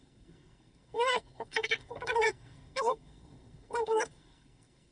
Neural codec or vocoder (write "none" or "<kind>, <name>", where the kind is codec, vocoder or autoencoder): codec, SNAC